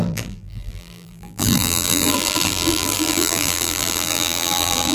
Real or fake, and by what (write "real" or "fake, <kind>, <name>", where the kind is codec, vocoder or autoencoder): fake, vocoder, BigVGAN v2